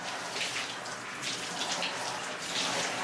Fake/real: real